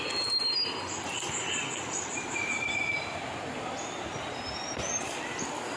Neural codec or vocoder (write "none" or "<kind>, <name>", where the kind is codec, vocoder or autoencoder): none